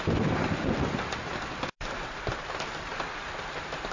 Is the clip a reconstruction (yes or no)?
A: no